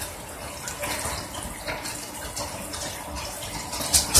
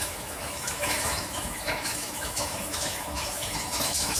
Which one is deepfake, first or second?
second